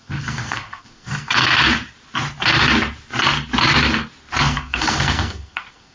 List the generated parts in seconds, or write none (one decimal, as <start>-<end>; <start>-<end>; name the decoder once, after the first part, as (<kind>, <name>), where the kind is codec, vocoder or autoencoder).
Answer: 0.0-1.5 (codec, SNAC); 4.4-5.9